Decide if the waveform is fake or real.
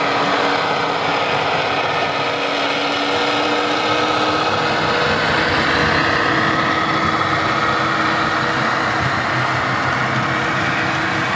real